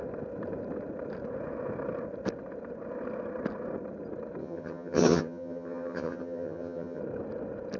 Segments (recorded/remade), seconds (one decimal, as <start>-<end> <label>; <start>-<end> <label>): 0.0-4.4 recorded; 4.4-7.0 remade; 7.0-7.8 recorded